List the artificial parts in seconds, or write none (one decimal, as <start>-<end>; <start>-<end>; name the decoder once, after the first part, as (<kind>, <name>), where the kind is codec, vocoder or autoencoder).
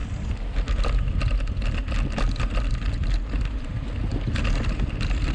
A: none